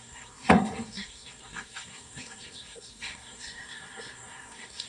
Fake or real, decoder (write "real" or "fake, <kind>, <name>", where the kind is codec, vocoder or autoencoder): fake, codec, SNAC